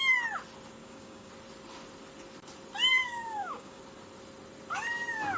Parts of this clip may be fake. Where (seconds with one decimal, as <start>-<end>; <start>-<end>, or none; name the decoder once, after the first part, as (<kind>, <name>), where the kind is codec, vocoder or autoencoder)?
0.8-1.3 (codec, DAC); 2.9-3.8